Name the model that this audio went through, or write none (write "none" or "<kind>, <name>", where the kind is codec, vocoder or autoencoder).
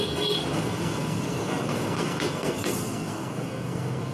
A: codec, SNAC